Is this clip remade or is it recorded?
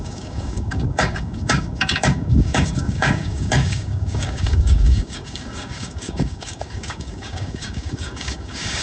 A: remade